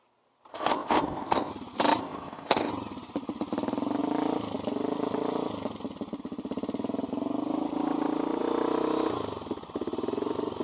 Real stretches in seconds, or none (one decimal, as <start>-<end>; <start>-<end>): 0.0-0.5; 1.5-2.0; 2.7-10.6